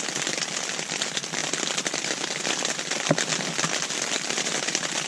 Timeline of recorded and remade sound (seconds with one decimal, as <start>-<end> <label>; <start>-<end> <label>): 0.0-5.1 recorded